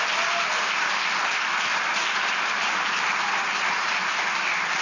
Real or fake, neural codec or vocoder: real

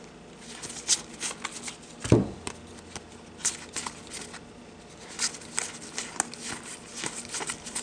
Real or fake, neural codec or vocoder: real